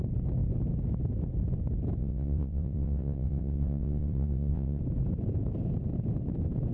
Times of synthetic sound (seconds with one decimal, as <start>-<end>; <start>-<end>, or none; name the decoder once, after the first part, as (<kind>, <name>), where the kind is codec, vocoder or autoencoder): 2.0-4.8 (vocoder, WaveNeXt)